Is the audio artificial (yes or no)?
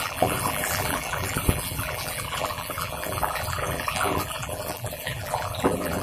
yes